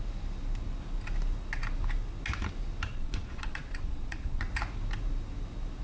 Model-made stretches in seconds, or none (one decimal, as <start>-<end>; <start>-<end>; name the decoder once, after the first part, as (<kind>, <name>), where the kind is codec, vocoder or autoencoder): 2.9-4.5 (vocoder, Vocos)